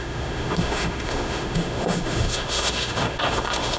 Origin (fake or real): fake